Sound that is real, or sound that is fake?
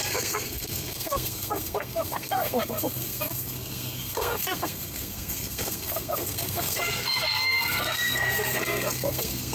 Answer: fake